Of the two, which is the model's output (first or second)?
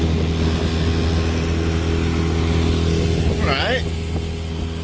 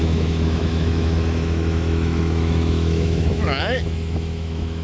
second